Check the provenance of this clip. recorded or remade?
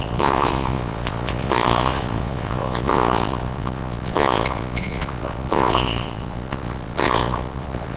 remade